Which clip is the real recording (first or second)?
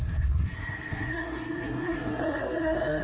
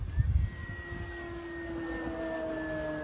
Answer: second